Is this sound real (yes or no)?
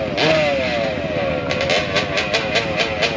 yes